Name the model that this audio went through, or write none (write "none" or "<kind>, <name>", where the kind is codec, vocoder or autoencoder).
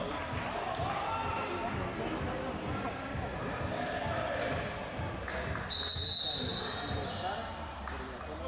none